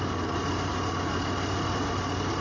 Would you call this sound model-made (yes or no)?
no